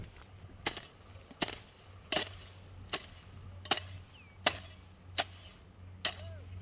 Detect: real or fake real